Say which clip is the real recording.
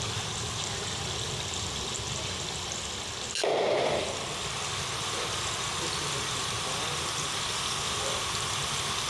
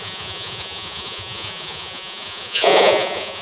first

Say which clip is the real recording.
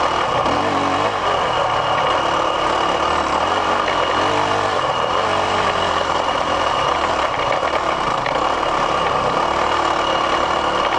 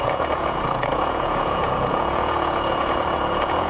first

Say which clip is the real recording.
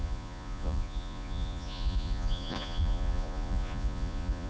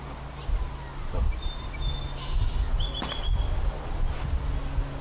second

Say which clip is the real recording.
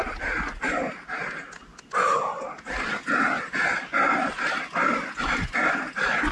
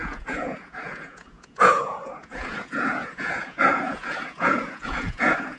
first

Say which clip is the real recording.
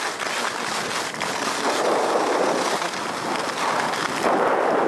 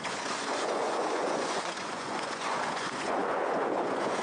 first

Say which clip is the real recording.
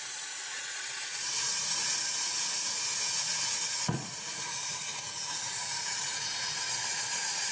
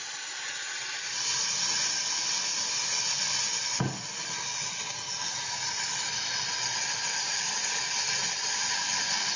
second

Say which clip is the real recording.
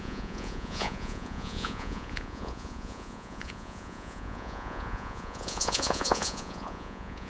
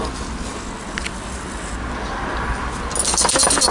second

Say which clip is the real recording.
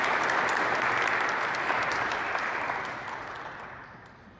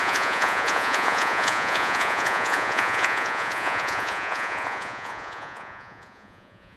first